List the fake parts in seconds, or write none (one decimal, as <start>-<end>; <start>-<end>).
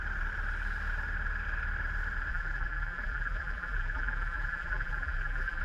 2.3-5.6